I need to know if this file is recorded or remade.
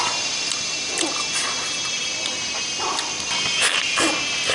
recorded